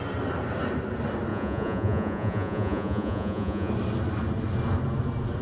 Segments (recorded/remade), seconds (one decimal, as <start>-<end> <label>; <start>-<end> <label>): 0.0-1.3 recorded; 1.3-3.7 remade; 3.7-5.4 recorded